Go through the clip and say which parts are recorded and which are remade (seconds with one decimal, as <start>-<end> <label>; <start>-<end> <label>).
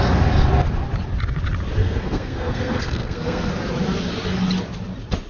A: 0.0-1.8 recorded; 1.8-3.5 remade; 3.5-5.3 recorded